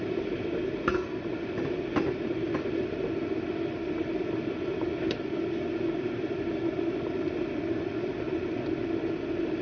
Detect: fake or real real